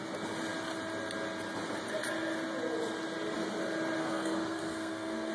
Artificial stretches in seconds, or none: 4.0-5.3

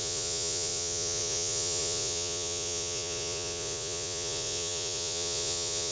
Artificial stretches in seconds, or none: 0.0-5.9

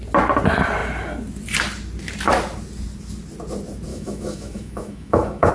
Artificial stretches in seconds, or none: 3.9-5.5

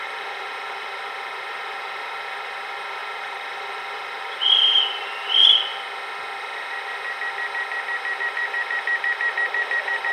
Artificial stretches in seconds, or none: 0.0-5.7; 8.2-10.1

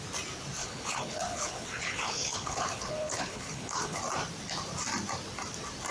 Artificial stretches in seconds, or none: 0.6-4.0